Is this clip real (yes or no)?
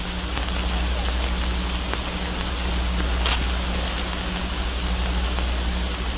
yes